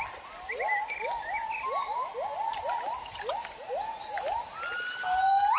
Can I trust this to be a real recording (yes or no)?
yes